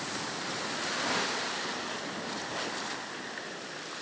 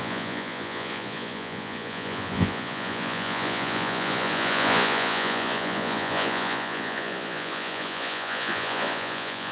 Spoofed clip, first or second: second